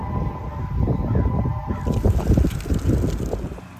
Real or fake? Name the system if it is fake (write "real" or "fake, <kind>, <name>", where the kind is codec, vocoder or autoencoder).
real